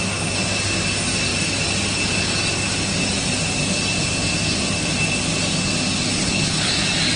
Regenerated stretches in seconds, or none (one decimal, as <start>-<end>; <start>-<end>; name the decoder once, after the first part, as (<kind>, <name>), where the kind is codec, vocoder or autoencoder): 6.2-6.7 (codec, HILCodec)